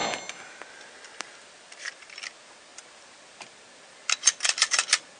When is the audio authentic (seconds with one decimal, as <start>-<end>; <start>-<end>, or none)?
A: 0.0-5.2